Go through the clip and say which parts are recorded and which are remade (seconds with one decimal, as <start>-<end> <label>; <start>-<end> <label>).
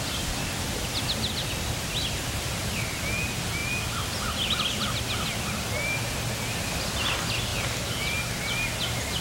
0.0-9.2 recorded